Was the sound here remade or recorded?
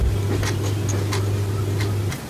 recorded